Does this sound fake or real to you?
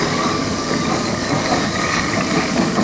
fake